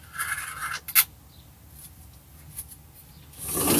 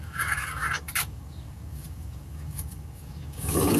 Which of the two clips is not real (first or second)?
second